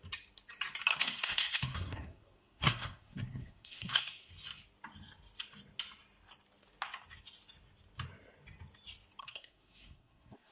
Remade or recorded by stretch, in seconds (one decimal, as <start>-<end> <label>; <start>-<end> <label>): 0.0-0.9 recorded; 0.9-4.3 remade; 4.3-9.2 recorded; 9.2-10.5 remade